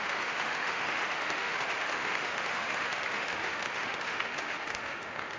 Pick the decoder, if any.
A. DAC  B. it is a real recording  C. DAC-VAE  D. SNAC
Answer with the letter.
C